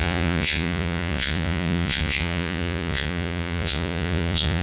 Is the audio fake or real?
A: fake